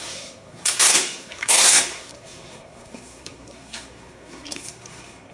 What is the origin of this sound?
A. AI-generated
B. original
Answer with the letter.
A